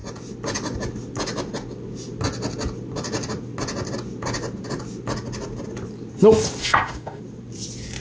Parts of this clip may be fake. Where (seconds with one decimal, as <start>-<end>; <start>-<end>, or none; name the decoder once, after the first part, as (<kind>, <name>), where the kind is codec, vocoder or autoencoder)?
6.6-7.2 (autoencoder, DAC-VAE)